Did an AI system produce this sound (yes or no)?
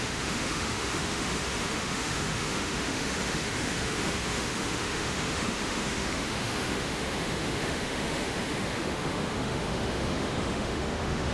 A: yes